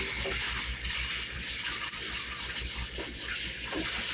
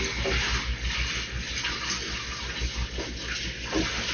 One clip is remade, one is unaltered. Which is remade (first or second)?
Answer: first